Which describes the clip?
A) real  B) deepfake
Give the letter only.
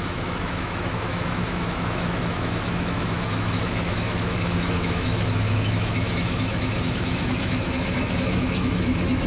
B